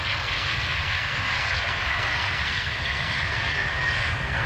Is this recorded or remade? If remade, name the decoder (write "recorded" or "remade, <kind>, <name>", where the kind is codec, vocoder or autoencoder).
remade, codec, SNAC